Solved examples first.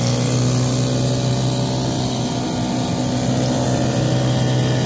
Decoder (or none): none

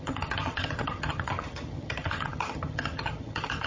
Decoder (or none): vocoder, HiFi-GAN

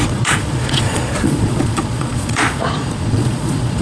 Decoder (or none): vocoder, Vocos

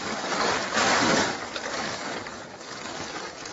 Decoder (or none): codec, DAC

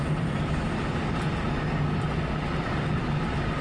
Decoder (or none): none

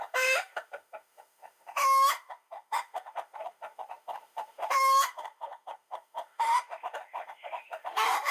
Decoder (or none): autoencoder, DAC-VAE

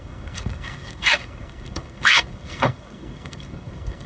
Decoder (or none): codec, SNAC